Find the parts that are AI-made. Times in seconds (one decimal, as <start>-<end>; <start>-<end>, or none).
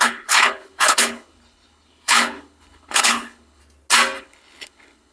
0.0-3.6; 4.2-5.1